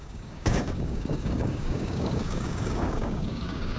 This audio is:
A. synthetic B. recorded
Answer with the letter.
A